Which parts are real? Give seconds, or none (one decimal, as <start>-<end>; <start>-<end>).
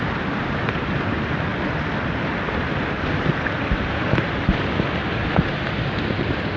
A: 0.0-1.5; 2.8-4.0; 4.5-6.6